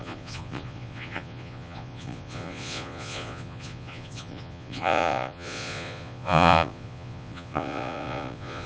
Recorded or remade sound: remade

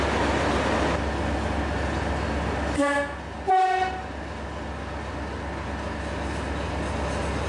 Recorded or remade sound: recorded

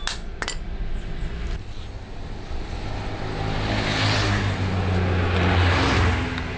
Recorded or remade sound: recorded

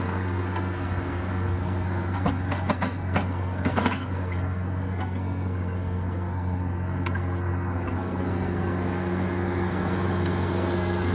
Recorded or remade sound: remade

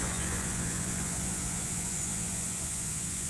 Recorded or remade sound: remade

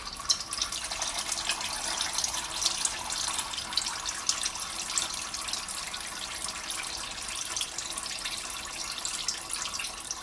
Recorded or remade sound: recorded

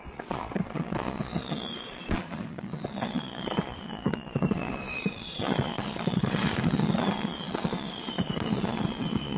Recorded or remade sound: remade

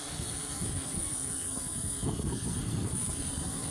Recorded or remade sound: remade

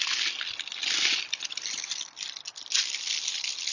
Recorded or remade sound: recorded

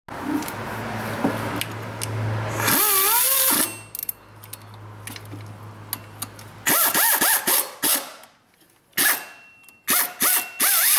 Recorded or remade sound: recorded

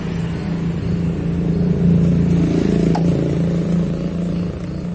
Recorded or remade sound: recorded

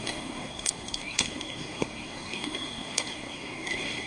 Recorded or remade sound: remade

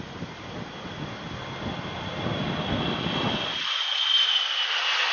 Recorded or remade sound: recorded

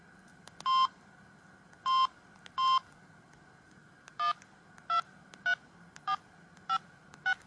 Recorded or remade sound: recorded